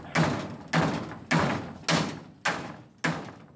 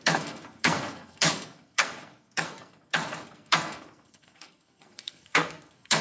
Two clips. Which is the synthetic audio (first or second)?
second